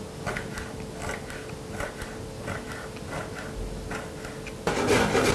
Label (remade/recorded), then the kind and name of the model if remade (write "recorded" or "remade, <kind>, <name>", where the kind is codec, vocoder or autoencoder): recorded